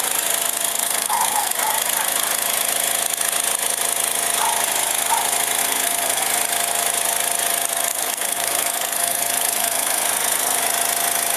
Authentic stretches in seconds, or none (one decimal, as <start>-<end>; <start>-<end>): 0.0-0.7; 1.5-5.6; 6.2-7.9; 10.6-11.4